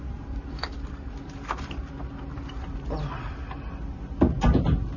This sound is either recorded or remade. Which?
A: recorded